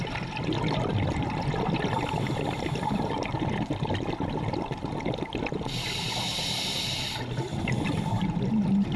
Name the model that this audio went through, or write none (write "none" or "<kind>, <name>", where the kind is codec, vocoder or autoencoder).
none